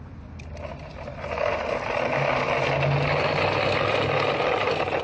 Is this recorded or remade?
recorded